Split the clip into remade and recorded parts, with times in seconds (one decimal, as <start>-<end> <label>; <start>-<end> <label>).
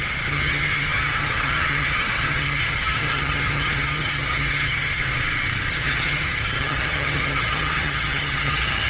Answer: 0.0-5.0 remade; 5.0-5.7 recorded; 5.7-8.9 remade